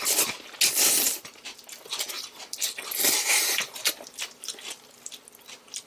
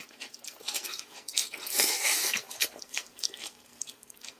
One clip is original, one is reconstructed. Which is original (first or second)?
first